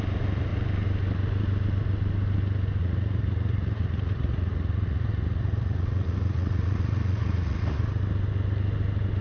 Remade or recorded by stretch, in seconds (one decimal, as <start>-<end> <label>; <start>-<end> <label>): 0.0-2.8 recorded; 2.8-8.0 remade; 8.0-9.2 recorded